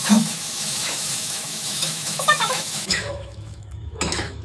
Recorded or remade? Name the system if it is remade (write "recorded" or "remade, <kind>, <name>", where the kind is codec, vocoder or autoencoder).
remade, autoencoder, DAC-VAE